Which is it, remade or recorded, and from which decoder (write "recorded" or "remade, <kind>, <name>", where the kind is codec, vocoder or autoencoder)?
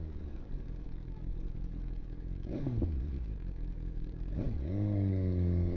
remade, codec, DAC